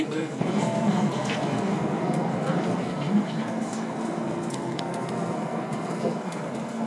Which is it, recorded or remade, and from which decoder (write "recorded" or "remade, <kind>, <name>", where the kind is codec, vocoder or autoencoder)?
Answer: remade, codec, SNAC